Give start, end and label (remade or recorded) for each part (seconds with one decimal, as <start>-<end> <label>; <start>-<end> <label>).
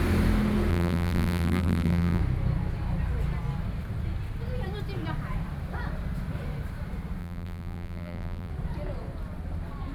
0.0-0.7 recorded; 0.7-2.2 remade; 2.2-7.2 recorded; 7.2-8.5 remade; 8.5-9.9 recorded